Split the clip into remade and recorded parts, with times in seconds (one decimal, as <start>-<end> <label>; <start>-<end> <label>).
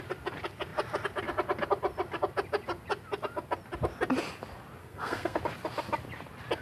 0.0-4.8 recorded; 4.8-5.4 remade; 5.4-6.6 recorded